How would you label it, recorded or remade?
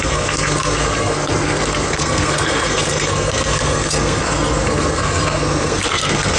remade